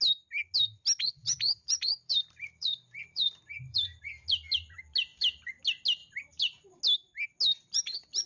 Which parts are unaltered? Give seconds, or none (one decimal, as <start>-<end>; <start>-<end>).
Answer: 0.0-1.2; 3.8-5.1; 5.6-6.0; 6.8-8.3